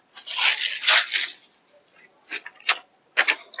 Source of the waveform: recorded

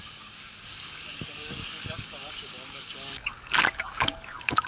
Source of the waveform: remade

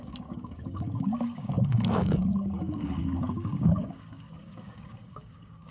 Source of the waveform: remade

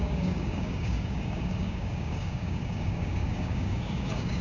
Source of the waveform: remade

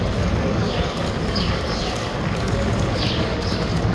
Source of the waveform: remade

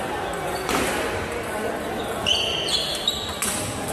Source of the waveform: recorded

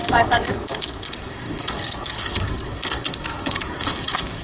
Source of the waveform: remade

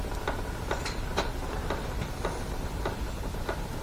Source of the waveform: recorded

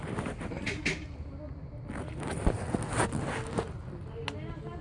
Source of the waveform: recorded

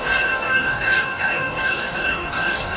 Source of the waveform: remade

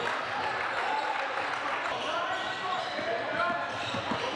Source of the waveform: recorded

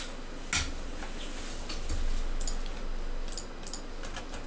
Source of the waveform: recorded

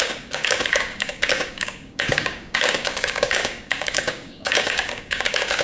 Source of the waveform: remade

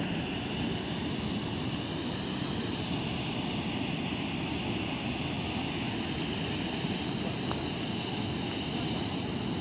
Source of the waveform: recorded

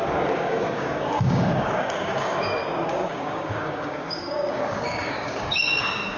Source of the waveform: remade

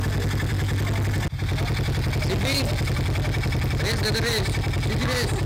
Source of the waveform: recorded